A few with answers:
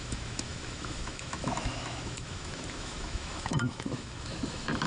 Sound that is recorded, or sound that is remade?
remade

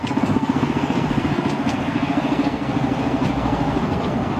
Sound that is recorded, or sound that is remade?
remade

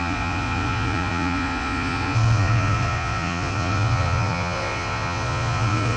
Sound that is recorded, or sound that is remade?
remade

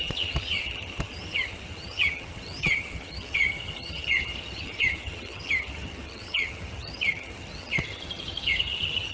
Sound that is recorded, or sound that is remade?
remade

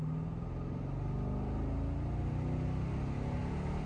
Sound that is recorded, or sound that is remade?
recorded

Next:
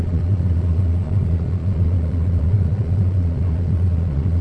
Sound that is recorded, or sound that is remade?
remade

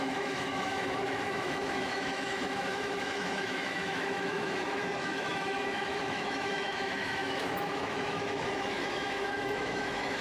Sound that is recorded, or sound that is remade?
remade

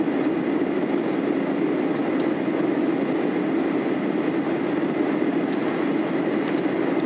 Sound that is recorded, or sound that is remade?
recorded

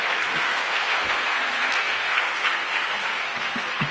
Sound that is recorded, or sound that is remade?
remade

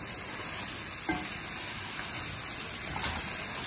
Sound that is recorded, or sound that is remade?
recorded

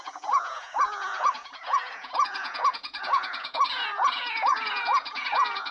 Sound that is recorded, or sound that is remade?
remade